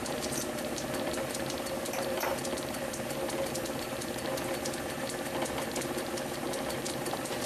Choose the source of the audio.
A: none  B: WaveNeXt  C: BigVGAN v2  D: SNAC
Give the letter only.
C